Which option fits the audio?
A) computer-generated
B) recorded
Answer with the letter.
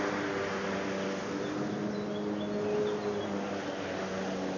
B